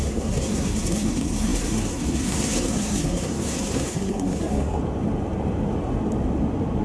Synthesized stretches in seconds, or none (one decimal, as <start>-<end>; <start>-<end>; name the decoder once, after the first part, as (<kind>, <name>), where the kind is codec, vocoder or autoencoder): 0.0-4.8 (codec, SNAC)